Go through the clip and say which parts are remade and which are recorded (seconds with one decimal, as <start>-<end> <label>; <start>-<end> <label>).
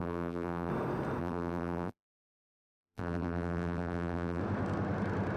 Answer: 0.0-0.7 remade; 0.7-1.2 recorded; 1.2-4.4 remade; 4.4-5.4 recorded